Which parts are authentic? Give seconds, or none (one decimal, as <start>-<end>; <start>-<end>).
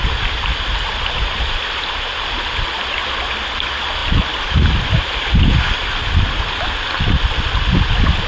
0.0-8.3